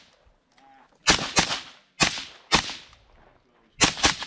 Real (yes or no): yes